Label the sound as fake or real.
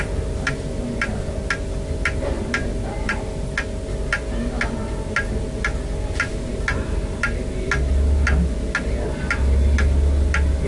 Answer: real